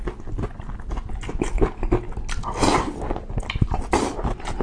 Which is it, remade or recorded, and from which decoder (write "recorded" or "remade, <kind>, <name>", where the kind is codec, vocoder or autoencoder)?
recorded